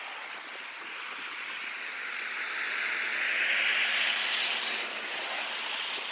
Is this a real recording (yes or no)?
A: yes